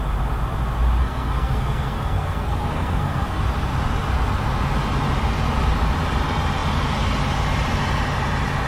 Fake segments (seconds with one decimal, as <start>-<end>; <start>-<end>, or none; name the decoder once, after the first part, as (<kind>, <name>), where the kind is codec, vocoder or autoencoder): 1.0-3.4 (codec, SNAC)